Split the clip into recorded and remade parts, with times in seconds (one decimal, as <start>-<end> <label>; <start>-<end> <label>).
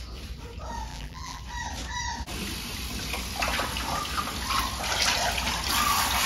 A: 0.0-0.9 recorded; 0.9-1.4 remade; 1.4-6.3 recorded